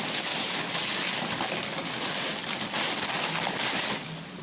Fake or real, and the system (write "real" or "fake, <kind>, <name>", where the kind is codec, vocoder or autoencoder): real